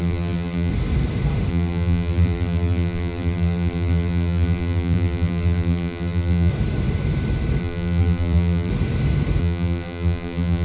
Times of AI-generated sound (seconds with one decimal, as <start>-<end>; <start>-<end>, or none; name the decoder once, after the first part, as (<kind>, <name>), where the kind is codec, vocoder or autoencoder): 0.0-0.7 (vocoder, BigVGAN v2); 1.5-6.5; 7.6-8.7; 9.4-10.6